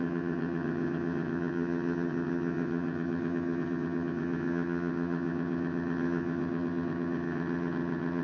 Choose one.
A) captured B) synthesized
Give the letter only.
B